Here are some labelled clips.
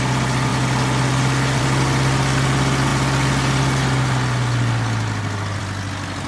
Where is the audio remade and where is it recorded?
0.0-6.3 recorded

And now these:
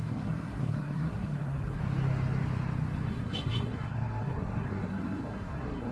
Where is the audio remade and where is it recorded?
0.0-1.8 remade; 1.8-3.1 recorded; 3.1-5.9 remade